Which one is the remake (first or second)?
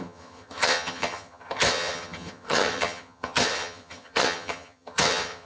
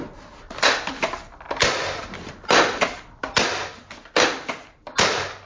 first